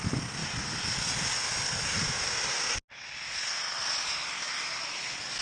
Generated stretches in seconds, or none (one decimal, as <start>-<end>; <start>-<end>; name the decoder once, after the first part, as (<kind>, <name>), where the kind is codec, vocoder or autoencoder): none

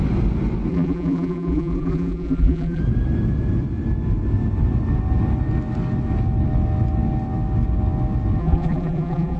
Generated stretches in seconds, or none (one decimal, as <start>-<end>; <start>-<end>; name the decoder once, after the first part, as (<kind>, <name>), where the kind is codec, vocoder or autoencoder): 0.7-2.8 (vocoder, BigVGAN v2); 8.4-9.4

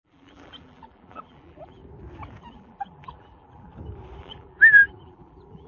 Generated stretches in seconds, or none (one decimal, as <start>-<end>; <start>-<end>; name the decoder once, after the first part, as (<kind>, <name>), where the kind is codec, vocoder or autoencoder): 0.0-1.8 (vocoder, BigVGAN v2); 2.4-3.7; 4.2-5.7

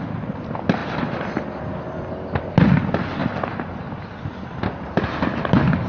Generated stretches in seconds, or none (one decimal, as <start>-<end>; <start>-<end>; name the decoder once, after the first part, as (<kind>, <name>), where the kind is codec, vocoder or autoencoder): 3.2-4.9 (vocoder, BigVGAN v2)

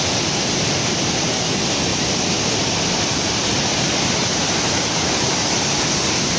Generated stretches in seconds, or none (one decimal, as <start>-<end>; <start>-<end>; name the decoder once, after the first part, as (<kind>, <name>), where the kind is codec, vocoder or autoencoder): 1.9-2.6 (vocoder, BigVGAN v2); 3.7-5.5

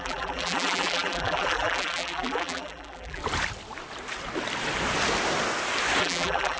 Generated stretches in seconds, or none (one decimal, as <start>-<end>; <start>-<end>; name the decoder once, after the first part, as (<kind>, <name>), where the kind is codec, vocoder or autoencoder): 0.0-3.2 (vocoder, BigVGAN v2); 6.0-6.6

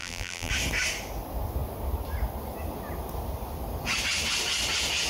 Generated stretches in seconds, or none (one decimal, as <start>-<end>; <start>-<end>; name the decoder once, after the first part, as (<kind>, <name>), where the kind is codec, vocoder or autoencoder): 0.0-0.5 (vocoder, BigVGAN v2)